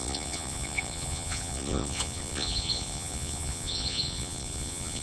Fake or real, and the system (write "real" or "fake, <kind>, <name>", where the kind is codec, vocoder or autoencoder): fake, vocoder, Vocos